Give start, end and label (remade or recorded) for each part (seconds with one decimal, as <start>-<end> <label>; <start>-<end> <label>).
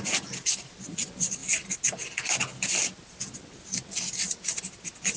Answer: 0.0-5.2 recorded